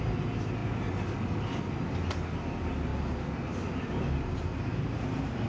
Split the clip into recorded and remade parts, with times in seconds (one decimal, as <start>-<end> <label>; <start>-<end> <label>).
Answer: 0.0-5.5 recorded